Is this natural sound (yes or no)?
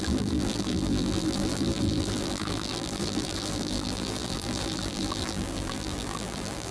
no